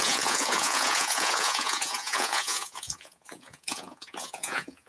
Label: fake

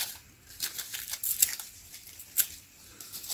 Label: fake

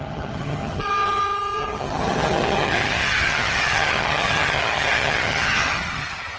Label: fake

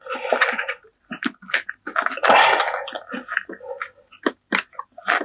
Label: real